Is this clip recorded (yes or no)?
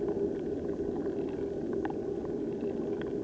yes